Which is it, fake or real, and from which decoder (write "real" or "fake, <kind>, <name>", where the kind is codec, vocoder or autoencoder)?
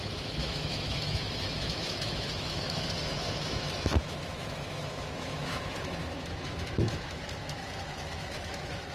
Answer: fake, autoencoder, DAC-VAE